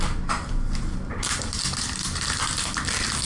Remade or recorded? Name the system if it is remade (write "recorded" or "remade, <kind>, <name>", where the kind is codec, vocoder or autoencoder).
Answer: recorded